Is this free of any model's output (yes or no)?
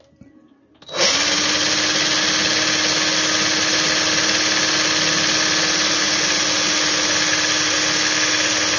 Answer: yes